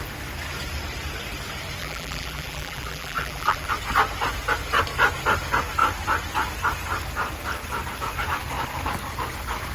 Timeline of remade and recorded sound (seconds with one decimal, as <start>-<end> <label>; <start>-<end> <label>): 0.0-1.8 recorded; 1.8-3.7 remade; 3.7-9.7 recorded